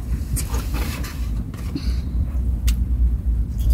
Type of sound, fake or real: fake